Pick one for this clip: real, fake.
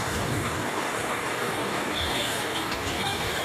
fake